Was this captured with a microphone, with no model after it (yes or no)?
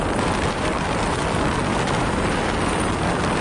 yes